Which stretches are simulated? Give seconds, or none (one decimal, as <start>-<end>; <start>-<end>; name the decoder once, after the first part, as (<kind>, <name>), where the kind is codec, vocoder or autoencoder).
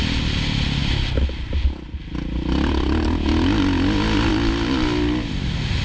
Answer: none